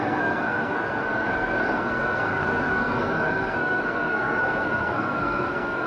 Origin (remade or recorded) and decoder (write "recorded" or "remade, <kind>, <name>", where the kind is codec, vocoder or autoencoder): remade, codec, SNAC